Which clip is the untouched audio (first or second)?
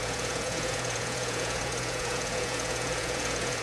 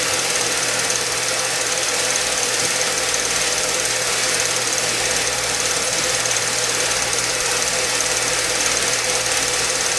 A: second